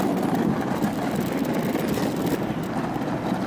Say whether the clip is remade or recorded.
remade